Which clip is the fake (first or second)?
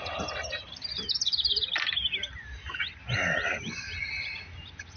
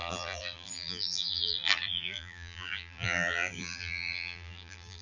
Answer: second